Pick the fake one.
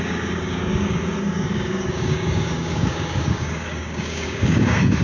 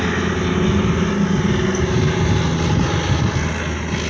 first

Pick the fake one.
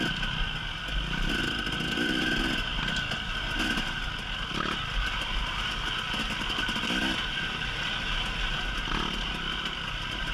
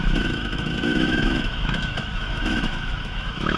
second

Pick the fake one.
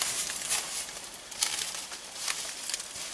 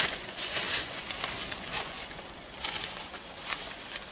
second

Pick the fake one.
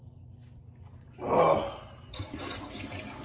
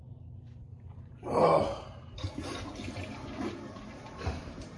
second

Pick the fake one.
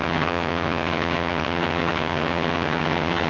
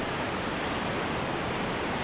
first